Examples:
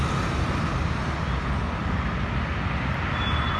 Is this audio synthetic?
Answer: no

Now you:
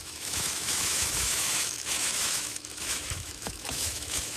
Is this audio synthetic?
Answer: yes